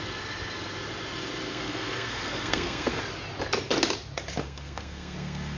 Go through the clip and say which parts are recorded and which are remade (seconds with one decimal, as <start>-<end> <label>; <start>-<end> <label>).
0.0-1.5 recorded; 1.5-3.0 remade; 3.0-4.4 recorded; 4.4-5.6 remade